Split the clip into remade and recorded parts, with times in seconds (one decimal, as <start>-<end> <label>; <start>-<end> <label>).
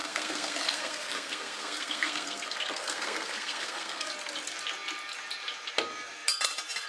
0.0-4.1 remade; 4.1-6.9 recorded